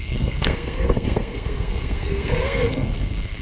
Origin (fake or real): fake